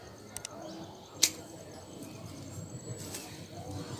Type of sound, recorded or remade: recorded